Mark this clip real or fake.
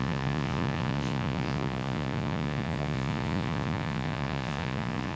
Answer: fake